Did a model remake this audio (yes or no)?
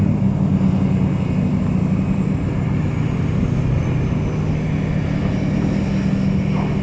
no